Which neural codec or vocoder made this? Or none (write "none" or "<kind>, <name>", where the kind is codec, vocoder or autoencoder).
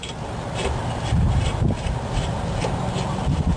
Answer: vocoder, BigVGAN v2